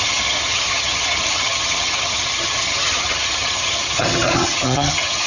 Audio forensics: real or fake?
fake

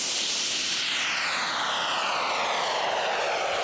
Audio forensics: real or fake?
real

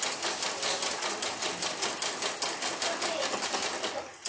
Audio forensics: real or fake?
real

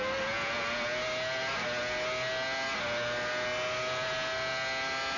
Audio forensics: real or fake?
real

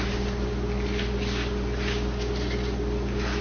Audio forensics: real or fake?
real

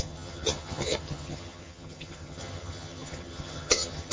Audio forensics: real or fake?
fake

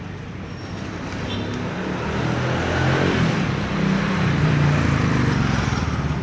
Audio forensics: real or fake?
real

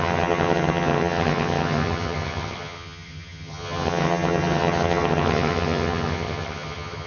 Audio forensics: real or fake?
fake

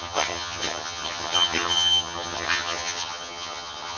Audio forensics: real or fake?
fake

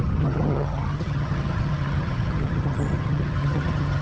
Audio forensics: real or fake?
fake